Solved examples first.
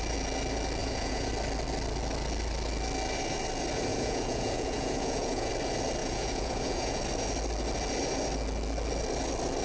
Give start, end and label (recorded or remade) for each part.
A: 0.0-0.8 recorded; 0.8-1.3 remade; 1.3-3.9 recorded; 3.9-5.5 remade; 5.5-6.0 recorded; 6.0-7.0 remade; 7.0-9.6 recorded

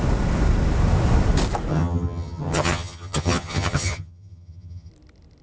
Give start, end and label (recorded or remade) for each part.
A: 0.0-1.7 recorded; 1.7-4.9 remade; 4.9-5.4 recorded

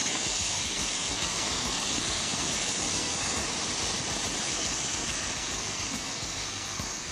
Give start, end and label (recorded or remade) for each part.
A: 0.0-3.4 remade; 3.4-4.4 recorded; 4.4-7.1 remade

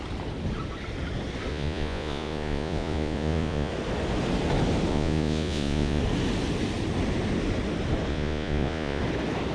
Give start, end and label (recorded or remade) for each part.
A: 0.0-1.5 recorded; 1.5-3.7 remade; 3.7-4.9 recorded; 4.9-6.0 remade; 6.0-8.1 recorded; 8.1-9.0 remade; 9.0-9.5 recorded

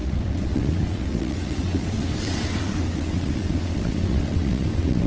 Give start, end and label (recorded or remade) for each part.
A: 0.0-5.1 remade